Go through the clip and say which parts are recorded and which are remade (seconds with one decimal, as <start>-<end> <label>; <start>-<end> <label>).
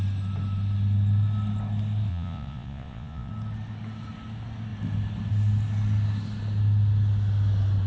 0.0-2.1 recorded; 2.1-3.3 remade; 3.3-7.9 recorded